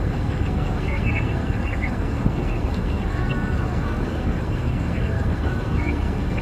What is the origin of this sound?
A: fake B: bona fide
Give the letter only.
A